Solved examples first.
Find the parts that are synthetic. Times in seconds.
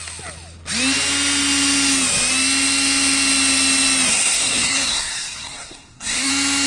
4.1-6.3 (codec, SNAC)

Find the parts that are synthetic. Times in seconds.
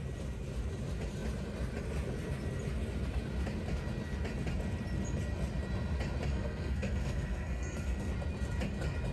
6.3-8.1 (codec, SNAC)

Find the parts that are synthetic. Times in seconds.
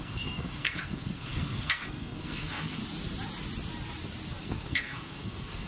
0.0-2.8 (codec, SNAC); 4.4-5.7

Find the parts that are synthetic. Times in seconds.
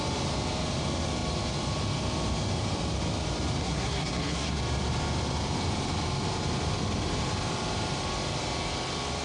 3.6-4.6 (codec, SNAC)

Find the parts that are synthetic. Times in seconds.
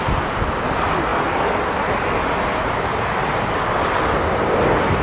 none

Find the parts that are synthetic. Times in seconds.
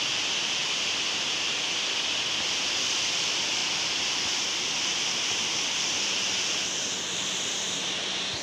none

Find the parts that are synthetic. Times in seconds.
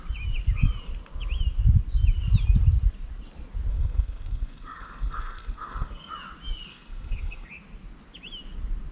3.7-6.1 (codec, SNAC); 6.7-7.5